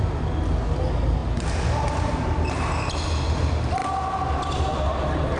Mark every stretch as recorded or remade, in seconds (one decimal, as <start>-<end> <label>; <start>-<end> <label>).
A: 0.0-5.4 recorded